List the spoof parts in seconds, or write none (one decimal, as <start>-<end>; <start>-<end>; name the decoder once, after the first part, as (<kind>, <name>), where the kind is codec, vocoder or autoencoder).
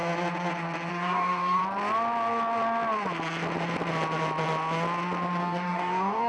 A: 0.9-1.6 (codec, DAC); 5.4-6.3